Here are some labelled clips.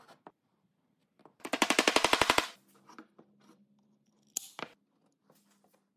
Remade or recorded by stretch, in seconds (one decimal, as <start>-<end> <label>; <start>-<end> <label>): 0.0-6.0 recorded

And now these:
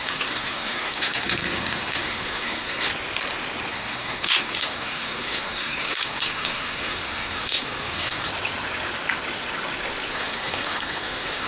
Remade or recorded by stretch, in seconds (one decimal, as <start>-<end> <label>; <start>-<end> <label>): 0.0-2.9 remade; 2.9-3.7 recorded; 3.7-8.3 remade; 8.3-10.1 recorded; 10.1-11.5 remade

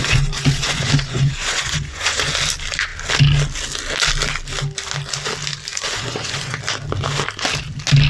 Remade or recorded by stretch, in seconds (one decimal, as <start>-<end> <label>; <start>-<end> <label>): 0.0-2.3 remade; 2.3-5.7 recorded; 5.7-6.6 remade; 6.6-8.1 recorded

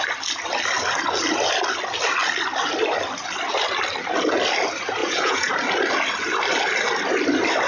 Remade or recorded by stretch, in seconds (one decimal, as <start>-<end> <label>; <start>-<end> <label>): 0.0-5.0 recorded; 5.0-5.5 remade; 5.5-7.7 recorded

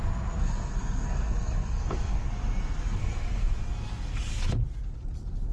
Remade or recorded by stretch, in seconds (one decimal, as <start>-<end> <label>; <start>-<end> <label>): 0.0-0.4 recorded; 0.4-2.3 remade; 2.3-3.0 recorded; 3.0-3.6 remade; 3.6-5.5 recorded

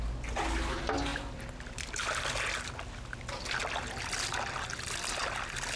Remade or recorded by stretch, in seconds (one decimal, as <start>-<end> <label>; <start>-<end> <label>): 0.0-5.8 recorded

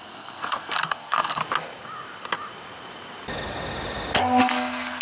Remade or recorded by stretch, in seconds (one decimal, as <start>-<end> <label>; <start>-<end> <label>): 0.0-1.4 remade; 1.4-4.4 recorded; 4.4-5.0 remade